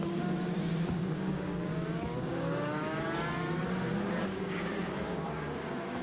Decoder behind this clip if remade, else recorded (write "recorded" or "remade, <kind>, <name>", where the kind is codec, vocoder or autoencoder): remade, codec, DAC